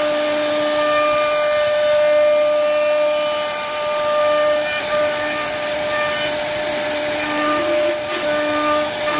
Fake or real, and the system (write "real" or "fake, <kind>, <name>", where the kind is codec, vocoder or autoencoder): real